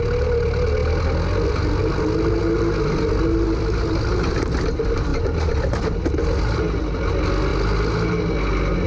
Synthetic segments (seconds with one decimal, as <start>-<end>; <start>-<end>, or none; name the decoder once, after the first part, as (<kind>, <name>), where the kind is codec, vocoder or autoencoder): none

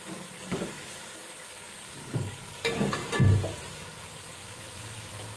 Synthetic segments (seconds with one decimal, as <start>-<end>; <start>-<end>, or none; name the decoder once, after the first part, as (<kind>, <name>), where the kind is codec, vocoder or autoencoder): 0.0-3.0 (codec, DAC); 3.7-5.4

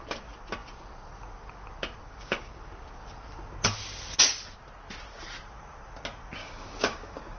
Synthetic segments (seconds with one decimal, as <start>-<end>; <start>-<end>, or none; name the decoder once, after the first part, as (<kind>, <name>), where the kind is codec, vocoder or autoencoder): 2.0-2.7 (codec, DAC); 6.4-7.4

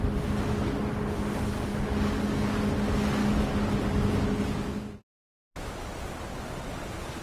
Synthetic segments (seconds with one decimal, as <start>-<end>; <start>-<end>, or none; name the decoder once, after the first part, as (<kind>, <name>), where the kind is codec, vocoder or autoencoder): 1.7-2.7 (codec, DAC); 3.2-4.1

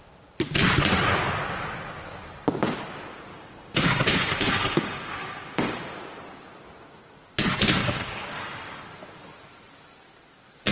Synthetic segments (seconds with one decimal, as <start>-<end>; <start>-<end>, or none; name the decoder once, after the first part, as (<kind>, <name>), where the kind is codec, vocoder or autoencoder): 3.3-5.9 (codec, DAC); 7.8-8.8

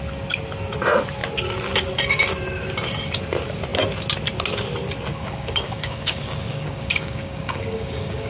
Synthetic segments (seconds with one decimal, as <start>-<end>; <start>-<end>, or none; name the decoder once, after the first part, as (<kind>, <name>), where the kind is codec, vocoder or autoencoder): 5.1-8.3 (codec, DAC)

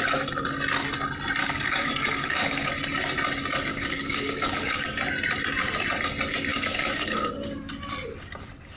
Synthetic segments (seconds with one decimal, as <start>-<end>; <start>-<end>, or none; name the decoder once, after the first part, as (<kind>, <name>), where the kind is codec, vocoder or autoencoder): 1.4-2.7 (codec, DAC); 3.7-5.0; 6.5-7.3

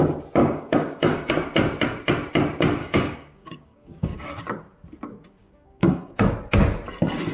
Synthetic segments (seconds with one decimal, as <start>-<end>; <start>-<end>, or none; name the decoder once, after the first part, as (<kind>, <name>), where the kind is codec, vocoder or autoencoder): 0.4-1.3 (codec, DAC); 2.8-4.4; 5.4-6.3